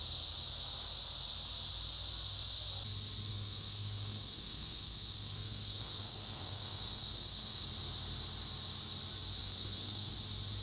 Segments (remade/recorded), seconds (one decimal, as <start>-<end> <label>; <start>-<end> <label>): 0.0-3.3 recorded; 3.3-7.6 remade; 7.6-9.4 recorded; 9.4-10.1 remade; 10.1-10.6 recorded